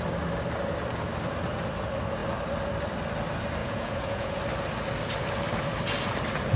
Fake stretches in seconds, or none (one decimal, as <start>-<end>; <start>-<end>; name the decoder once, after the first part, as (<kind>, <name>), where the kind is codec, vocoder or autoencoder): 3.6-4.4 (vocoder, Vocos)